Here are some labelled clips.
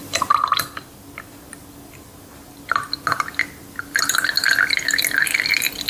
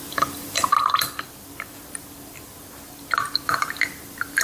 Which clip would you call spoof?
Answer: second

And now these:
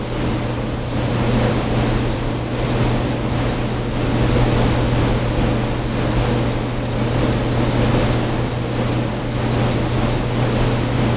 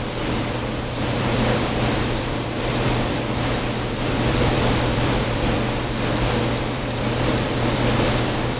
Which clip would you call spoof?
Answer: second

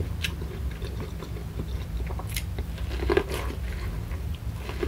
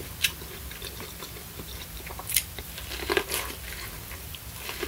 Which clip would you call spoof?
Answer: second